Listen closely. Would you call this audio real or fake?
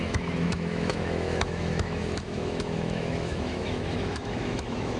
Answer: fake